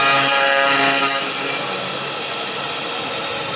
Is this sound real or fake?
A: real